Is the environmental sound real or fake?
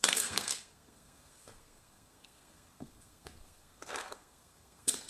fake